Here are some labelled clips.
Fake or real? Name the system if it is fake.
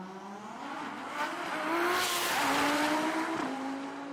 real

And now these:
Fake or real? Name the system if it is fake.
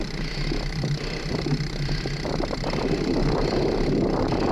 fake, vocoder, BigVGAN v2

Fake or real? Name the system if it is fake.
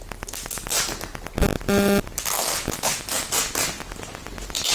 real